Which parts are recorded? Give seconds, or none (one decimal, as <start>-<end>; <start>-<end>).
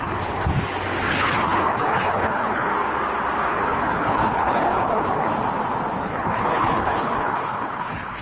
0.5-1.1; 2.7-3.5; 5.3-6.0